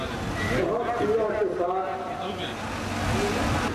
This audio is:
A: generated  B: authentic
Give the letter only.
B